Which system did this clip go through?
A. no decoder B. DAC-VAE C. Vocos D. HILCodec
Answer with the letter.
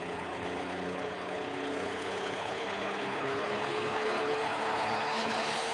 D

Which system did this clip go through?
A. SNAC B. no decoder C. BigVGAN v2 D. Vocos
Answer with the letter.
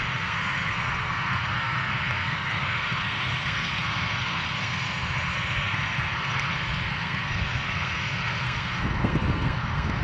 A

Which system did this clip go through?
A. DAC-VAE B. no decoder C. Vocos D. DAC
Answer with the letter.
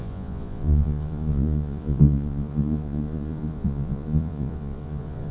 C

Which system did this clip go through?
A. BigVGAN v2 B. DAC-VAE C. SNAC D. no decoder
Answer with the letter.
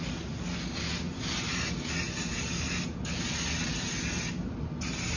D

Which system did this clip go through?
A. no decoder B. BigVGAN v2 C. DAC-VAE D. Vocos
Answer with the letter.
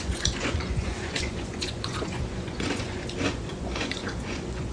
D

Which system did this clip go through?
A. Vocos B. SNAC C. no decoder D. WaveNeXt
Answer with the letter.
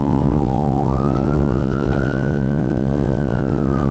D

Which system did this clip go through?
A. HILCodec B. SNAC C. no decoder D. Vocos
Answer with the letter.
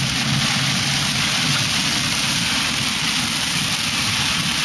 C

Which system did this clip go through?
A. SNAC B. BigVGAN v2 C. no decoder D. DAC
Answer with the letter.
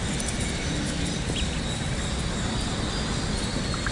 C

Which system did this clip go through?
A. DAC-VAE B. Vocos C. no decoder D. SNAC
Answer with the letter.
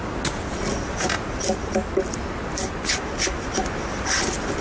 C